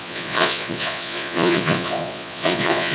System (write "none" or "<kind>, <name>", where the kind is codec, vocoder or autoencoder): vocoder, Vocos